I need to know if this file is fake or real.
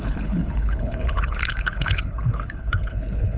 fake